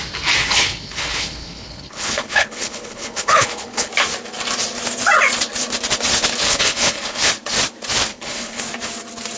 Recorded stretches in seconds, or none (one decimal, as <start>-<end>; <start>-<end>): 0.0-0.4; 3.9-6.5; 7.3-8.1; 8.6-9.4